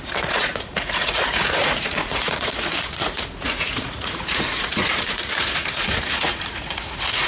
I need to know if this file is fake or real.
fake